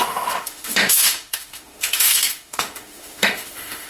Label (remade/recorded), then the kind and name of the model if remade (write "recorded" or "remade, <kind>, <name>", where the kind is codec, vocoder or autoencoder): remade, autoencoder, DAC-VAE